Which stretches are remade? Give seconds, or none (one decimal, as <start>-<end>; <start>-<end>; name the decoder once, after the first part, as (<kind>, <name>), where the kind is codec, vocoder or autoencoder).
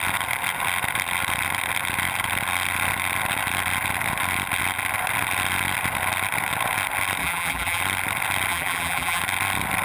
7.2-7.8 (vocoder, BigVGAN v2); 8.5-9.2